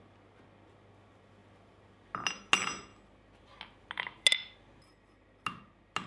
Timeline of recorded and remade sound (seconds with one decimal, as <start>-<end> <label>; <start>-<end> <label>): 0.0-6.1 recorded